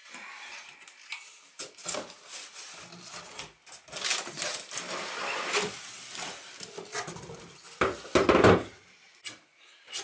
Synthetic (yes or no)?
no